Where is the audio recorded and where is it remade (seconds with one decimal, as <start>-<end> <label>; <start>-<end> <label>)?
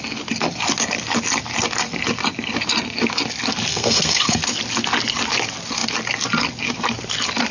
0.0-3.7 recorded; 3.7-4.4 remade; 4.4-7.5 recorded